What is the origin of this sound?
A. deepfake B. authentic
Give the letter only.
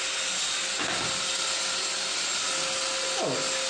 B